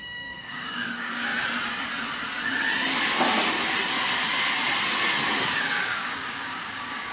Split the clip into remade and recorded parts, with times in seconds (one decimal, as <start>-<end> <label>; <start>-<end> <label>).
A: 0.0-1.3 remade; 1.3-5.6 recorded; 5.6-7.1 remade